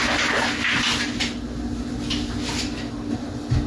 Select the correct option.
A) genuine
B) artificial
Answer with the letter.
A